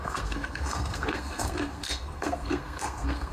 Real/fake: fake